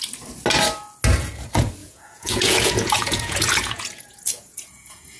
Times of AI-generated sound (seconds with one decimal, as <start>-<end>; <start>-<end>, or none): 1.8-5.2